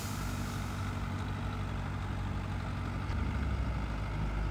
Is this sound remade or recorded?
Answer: recorded